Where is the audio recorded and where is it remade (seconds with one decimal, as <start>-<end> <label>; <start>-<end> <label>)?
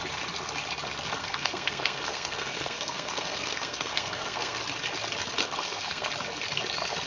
0.0-1.2 recorded; 1.2-4.6 remade; 4.6-5.4 recorded; 5.4-6.1 remade; 6.1-7.1 recorded